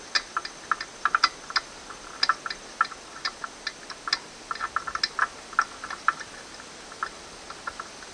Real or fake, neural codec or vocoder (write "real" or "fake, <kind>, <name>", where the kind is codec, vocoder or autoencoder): real